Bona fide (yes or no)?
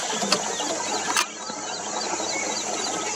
yes